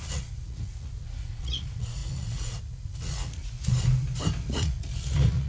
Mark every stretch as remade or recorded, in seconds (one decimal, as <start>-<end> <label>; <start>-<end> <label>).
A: 0.0-3.7 remade; 3.7-4.4 recorded; 4.4-5.5 remade